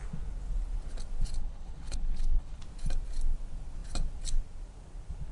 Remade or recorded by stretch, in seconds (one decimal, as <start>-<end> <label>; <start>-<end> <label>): 0.0-1.4 recorded; 1.4-2.6 remade; 2.6-5.3 recorded